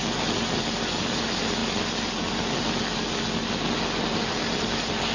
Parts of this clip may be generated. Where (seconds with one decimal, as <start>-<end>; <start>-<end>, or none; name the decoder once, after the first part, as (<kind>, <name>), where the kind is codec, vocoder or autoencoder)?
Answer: none